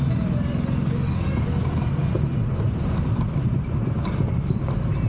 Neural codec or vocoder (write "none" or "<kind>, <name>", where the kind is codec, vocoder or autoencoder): none